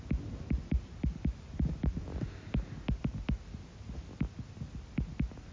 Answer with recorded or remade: recorded